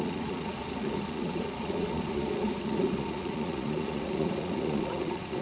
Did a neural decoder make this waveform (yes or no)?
yes